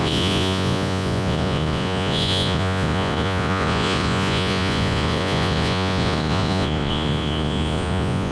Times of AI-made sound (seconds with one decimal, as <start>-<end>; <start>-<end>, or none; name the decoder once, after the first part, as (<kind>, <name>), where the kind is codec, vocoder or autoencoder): 0.0-8.3 (vocoder, Vocos)